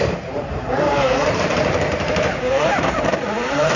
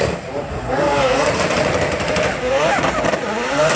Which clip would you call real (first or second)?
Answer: second